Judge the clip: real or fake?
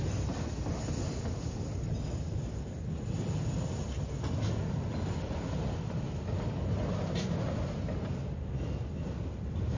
real